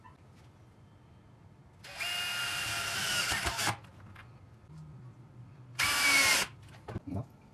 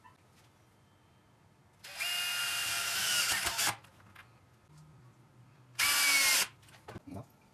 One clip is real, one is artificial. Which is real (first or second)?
second